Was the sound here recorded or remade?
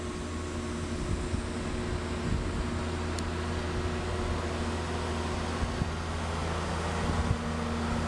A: recorded